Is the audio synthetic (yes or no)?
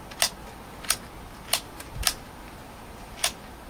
no